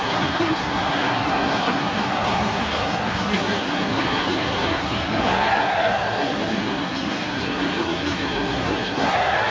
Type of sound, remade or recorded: remade